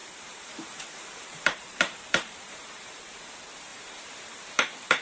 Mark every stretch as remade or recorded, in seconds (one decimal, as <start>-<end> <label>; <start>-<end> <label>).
0.0-3.0 remade; 3.0-3.7 recorded; 3.7-5.0 remade

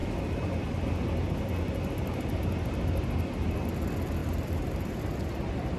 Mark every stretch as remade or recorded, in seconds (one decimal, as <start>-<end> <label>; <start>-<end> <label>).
0.0-4.2 recorded; 4.2-5.0 remade; 5.0-5.8 recorded